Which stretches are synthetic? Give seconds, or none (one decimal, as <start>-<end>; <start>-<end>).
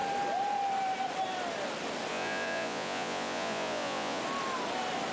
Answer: 2.1-4.2